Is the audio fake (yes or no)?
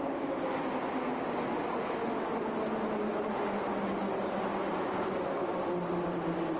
no